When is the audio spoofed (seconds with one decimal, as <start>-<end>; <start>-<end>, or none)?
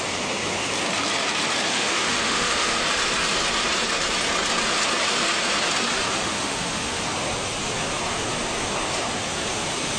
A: 1.7-2.8; 6.1-7.0